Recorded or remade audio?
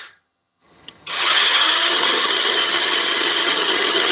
remade